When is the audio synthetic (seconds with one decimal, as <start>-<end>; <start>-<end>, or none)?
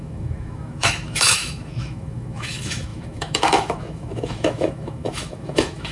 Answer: 0.0-5.9